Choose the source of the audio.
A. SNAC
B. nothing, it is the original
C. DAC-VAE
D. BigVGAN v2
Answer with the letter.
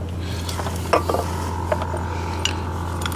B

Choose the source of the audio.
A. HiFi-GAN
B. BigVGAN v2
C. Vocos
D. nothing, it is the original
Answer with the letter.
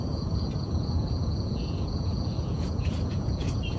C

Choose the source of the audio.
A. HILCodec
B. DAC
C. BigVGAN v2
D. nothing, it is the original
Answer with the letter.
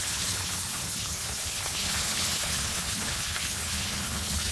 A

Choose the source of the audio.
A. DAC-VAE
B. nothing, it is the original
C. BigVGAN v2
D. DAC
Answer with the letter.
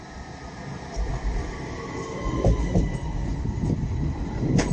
B